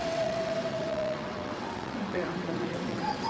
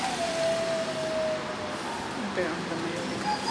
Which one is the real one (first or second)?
second